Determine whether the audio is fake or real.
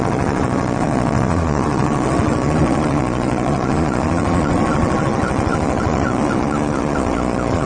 fake